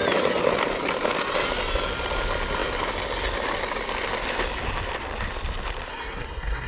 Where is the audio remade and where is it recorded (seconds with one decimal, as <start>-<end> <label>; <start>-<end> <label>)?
0.0-5.9 recorded; 5.9-6.7 remade